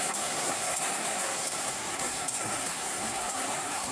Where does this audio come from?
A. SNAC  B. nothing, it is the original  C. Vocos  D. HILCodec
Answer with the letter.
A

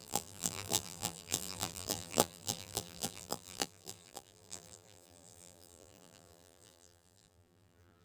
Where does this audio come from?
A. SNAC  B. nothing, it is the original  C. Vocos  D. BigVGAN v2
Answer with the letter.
D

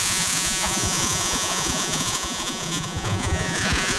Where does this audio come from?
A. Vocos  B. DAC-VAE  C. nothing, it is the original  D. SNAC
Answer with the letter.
A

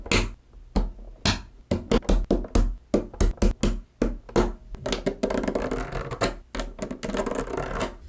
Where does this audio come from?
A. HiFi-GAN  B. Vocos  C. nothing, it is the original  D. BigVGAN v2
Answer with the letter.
C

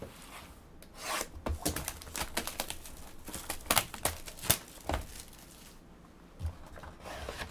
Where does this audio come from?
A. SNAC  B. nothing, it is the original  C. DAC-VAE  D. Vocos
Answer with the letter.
B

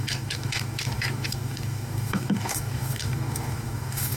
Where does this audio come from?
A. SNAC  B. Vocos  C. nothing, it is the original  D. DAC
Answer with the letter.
D